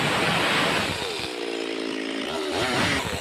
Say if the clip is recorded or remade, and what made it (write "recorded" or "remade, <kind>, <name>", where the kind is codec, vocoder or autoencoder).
recorded